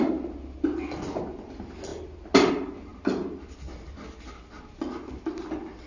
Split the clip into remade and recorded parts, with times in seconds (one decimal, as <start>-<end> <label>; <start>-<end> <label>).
0.0-5.9 recorded